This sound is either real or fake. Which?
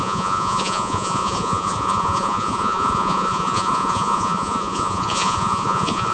fake